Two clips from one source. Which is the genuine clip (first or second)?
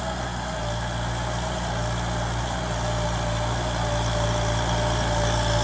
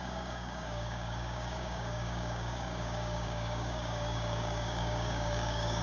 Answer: first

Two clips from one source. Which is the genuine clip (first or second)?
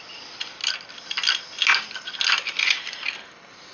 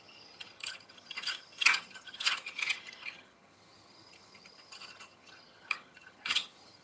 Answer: first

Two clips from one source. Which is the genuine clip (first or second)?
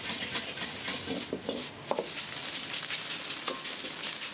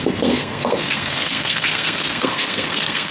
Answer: first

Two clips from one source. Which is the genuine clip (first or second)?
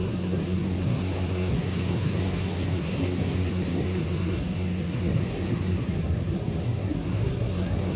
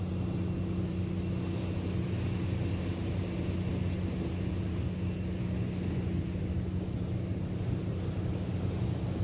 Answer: second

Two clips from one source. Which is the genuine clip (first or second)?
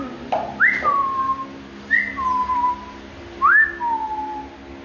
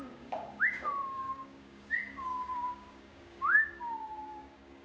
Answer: first